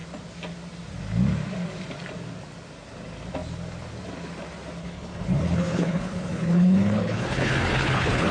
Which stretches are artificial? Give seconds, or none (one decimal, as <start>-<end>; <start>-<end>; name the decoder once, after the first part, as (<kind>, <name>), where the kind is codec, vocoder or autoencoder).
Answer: 4.8-8.3 (codec, HILCodec)